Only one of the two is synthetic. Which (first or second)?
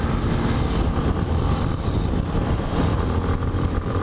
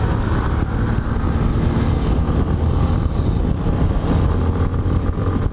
first